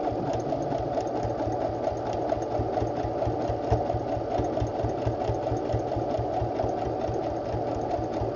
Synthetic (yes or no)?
no